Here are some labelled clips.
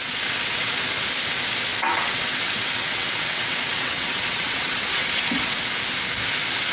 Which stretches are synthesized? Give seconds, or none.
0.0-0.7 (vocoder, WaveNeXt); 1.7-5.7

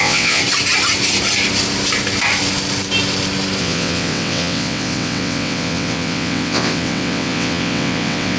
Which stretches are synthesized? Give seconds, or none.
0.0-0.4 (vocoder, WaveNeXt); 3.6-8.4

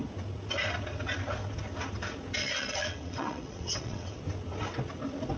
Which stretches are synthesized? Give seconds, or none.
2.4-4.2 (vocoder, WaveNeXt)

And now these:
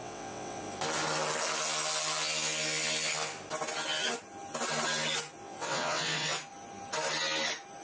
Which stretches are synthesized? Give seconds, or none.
0.0-0.6 (vocoder, WaveNeXt); 5.4-6.4

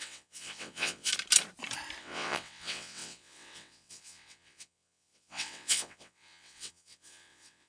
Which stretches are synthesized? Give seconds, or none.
0.0-1.1 (vocoder, WaveNeXt); 2.0-7.7

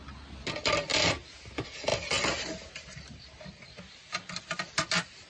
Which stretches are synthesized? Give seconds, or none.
none

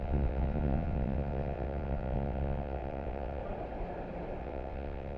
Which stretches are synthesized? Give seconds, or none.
0.0-3.4 (vocoder, WaveNeXt); 4.4-5.2

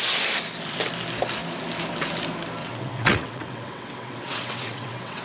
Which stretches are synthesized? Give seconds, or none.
2.6-5.2 (vocoder, WaveNeXt)